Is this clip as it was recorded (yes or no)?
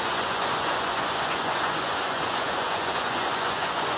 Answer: no